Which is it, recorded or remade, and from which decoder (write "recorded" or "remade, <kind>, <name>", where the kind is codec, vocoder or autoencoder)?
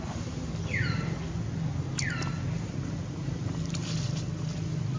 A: recorded